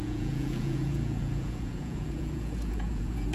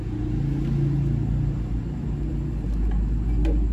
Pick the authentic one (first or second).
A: second